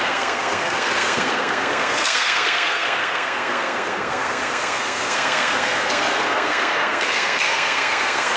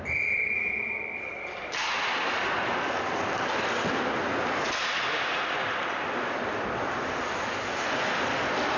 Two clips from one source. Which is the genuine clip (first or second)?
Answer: second